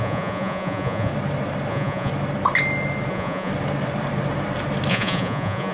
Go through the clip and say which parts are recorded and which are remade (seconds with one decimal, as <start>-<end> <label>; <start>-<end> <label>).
0.0-1.1 remade; 1.1-1.7 recorded; 1.7-2.1 remade; 2.1-3.1 recorded; 3.1-3.5 remade; 3.5-4.9 recorded; 4.9-5.7 remade